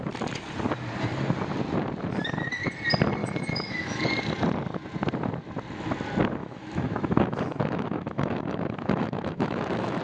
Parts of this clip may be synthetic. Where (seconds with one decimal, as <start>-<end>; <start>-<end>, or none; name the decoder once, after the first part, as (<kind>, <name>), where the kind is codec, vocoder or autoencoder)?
3.2-4.0 (autoencoder, DAC-VAE); 6.4-10.0